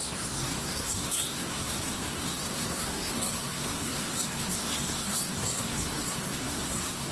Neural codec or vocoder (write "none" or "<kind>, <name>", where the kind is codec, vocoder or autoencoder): codec, SNAC